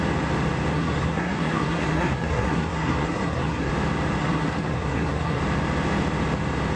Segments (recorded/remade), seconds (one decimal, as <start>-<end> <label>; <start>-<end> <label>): 0.0-0.7 recorded; 0.7-3.7 remade; 3.7-4.2 recorded; 4.2-5.4 remade; 5.4-6.8 recorded